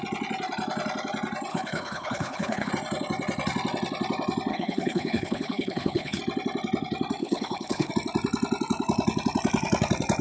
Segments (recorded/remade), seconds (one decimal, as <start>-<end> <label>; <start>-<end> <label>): 0.0-1.5 recorded; 1.5-2.7 remade; 2.7-4.5 recorded; 4.5-6.2 remade; 6.2-7.2 recorded; 7.2-7.9 remade; 7.9-10.2 recorded